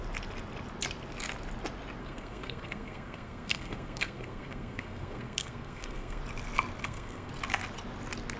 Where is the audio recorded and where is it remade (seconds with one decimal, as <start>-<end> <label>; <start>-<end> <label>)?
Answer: 0.0-2.0 recorded; 2.0-6.2 remade; 6.2-6.8 recorded; 6.8-7.3 remade; 7.3-8.4 recorded